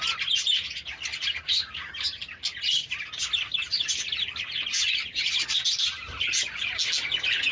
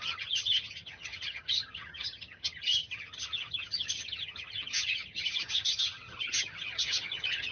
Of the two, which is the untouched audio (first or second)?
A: first